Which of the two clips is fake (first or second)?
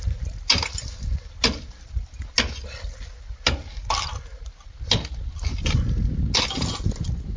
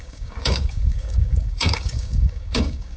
second